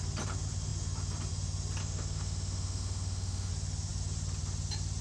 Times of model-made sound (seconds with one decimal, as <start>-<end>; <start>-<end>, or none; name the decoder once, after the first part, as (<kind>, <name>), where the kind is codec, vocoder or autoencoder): 1.8-3.5 (autoencoder, DAC-VAE)